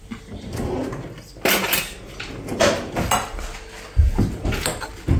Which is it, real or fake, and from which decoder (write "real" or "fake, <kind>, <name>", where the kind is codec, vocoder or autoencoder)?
real